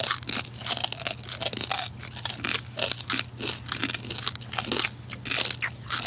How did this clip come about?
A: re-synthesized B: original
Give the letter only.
B